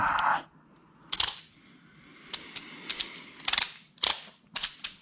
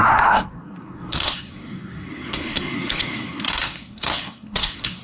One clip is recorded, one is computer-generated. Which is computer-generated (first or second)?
second